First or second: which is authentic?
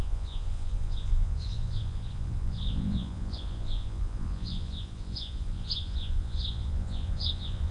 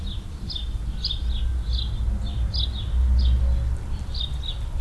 second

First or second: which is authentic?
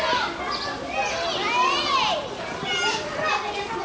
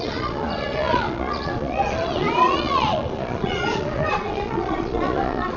first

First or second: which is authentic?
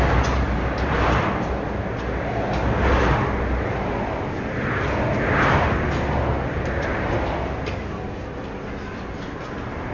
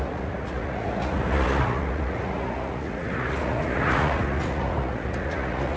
first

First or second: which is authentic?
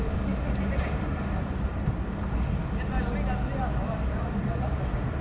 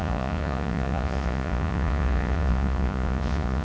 first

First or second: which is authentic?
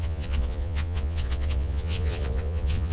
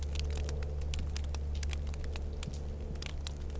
second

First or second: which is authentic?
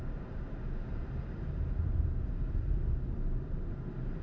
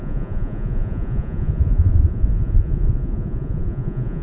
first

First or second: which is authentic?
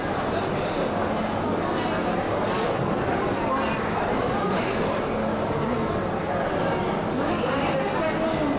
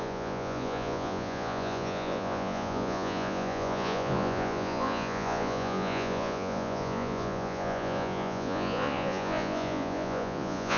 first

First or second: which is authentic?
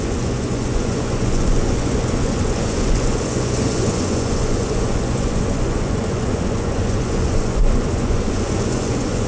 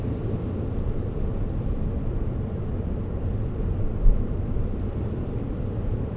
second